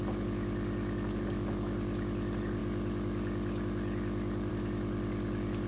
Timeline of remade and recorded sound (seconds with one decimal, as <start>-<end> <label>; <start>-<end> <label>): 0.0-5.7 recorded